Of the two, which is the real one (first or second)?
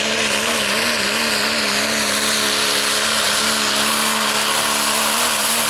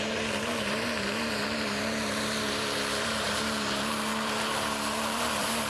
first